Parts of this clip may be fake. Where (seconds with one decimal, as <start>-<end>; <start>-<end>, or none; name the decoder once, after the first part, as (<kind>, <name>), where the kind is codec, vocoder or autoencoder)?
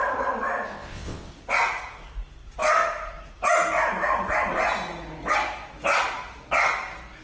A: 0.7-1.3 (vocoder, WaveNeXt)